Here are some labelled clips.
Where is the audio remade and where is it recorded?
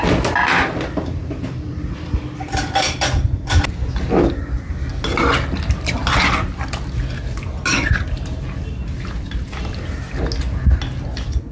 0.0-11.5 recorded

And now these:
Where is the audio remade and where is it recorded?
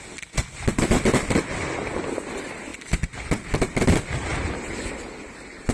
0.0-5.7 recorded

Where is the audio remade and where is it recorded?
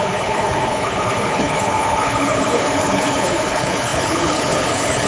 0.0-5.1 remade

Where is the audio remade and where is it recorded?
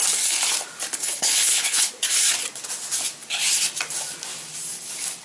0.0-1.0 recorded; 1.0-1.9 remade; 1.9-5.2 recorded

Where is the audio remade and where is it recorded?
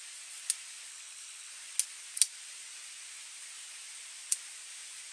0.0-0.9 recorded; 0.9-1.5 remade; 1.5-5.1 recorded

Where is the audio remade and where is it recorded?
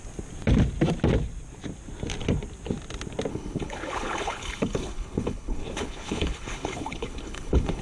0.0-3.3 recorded; 3.3-7.8 remade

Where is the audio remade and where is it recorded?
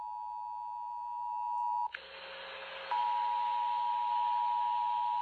0.0-5.2 recorded